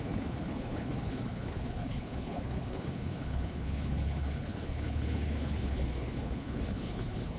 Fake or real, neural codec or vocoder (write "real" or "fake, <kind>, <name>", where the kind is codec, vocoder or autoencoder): fake, codec, HILCodec